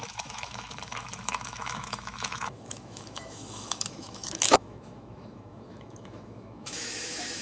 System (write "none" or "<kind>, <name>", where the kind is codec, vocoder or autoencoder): autoencoder, DAC-VAE